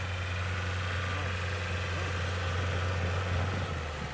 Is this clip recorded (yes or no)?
yes